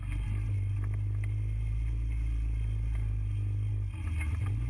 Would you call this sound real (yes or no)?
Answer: yes